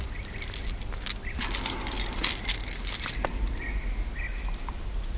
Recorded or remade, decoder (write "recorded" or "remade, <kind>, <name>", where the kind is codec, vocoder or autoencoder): recorded